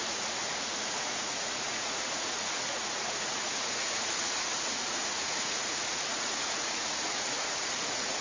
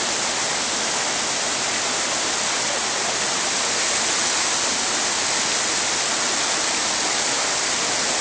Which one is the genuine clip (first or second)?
second